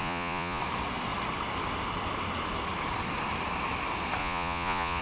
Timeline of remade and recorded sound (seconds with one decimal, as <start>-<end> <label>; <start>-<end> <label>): 0.0-0.6 remade; 0.6-4.2 recorded; 4.2-5.0 remade